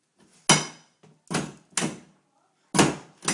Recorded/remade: recorded